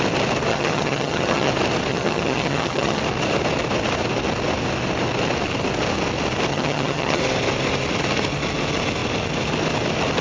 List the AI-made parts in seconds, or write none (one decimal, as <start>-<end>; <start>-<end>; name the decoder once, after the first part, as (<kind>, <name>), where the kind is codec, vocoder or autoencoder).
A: 0.5-1.5 (vocoder, HiFi-GAN); 1.9-3.0; 6.5-7.2